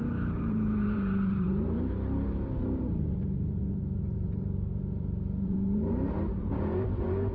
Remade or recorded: remade